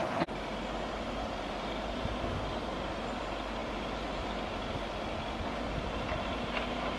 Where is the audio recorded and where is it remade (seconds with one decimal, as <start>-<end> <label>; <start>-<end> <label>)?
0.0-7.0 recorded